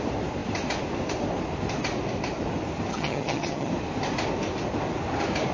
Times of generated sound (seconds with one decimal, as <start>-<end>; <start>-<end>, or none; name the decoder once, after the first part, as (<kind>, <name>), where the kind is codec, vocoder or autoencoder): 2.9-3.7 (vocoder, HiFi-GAN)